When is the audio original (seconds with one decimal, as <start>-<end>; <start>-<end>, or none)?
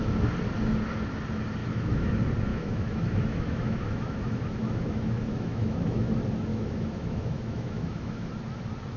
0.0-1.6; 2.1-2.5; 6.1-6.5; 8.3-9.0